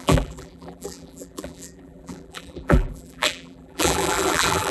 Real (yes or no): no